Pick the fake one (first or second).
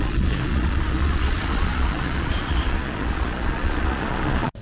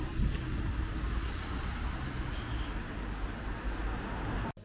first